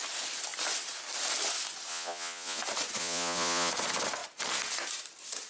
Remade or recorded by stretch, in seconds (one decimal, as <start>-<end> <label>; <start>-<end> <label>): 0.0-1.9 recorded; 1.9-2.6 remade; 2.6-3.0 recorded; 3.0-3.7 remade; 3.7-5.5 recorded